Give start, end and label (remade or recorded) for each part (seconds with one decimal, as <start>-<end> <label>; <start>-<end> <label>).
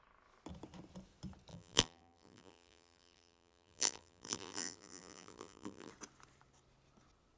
0.0-1.5 recorded; 1.5-5.9 remade; 5.9-7.4 recorded